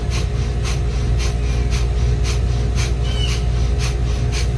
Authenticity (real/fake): real